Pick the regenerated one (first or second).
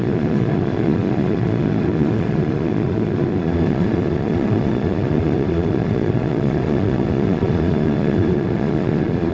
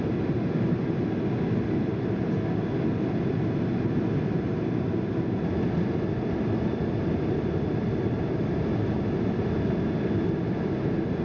first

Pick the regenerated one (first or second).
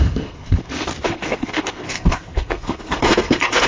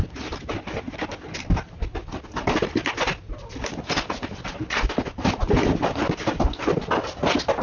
first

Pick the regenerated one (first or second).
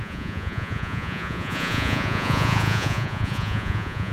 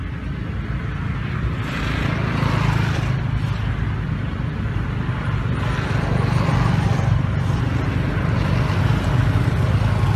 first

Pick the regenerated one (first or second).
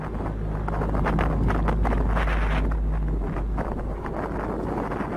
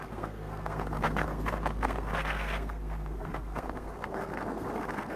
second